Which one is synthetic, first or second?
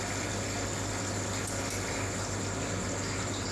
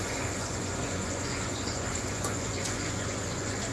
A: second